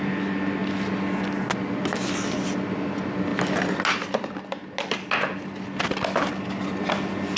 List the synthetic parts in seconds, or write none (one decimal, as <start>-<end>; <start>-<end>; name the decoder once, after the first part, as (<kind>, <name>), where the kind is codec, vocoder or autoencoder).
none